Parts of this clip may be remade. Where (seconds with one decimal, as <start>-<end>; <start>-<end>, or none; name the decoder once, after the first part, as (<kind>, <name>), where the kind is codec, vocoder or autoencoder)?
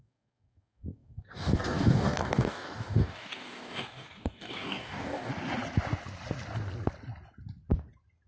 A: 0.0-5.3 (codec, DAC)